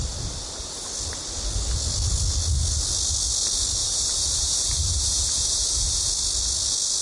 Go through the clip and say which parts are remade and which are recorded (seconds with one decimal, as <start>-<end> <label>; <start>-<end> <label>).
0.0-3.8 recorded; 3.8-6.1 remade; 6.1-7.0 recorded

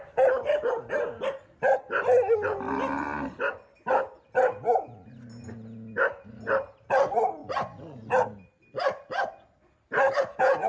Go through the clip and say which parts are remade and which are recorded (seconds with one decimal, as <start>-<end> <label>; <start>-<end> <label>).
0.0-10.7 recorded

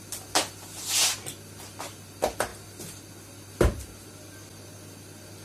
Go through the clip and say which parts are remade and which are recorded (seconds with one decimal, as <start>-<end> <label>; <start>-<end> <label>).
0.0-5.4 recorded

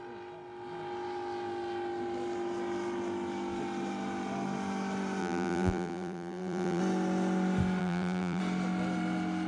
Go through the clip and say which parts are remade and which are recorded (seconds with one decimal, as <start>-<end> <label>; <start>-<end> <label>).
0.0-5.2 recorded; 5.2-6.8 remade; 6.8-7.8 recorded; 7.8-8.4 remade; 8.4-9.5 recorded

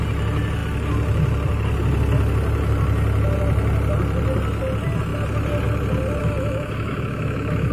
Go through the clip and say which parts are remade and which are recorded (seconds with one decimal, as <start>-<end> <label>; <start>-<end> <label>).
0.0-6.2 recorded; 6.2-7.7 remade

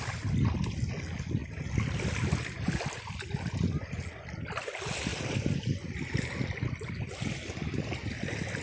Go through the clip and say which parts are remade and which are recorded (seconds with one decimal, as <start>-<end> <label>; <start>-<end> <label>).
0.0-8.6 recorded

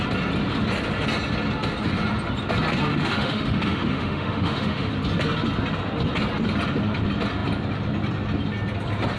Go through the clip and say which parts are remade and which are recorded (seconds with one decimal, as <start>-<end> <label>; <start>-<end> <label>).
0.0-2.9 recorded; 2.9-4.9 remade; 4.9-9.2 recorded